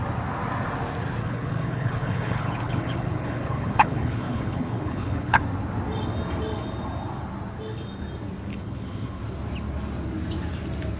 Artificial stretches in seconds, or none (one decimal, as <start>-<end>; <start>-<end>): 1.2-5.4; 8.5-9.2